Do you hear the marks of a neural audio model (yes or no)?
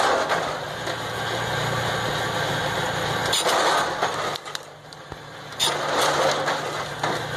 no